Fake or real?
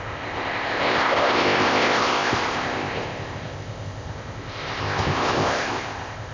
fake